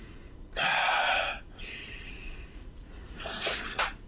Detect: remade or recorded remade